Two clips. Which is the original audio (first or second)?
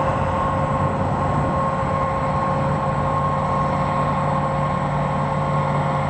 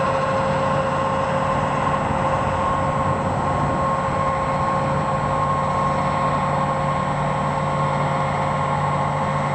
second